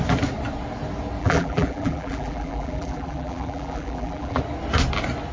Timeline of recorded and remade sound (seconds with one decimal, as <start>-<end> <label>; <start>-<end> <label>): 0.0-1.2 recorded; 1.2-4.4 remade; 4.4-5.3 recorded